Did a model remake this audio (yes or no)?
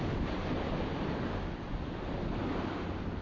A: no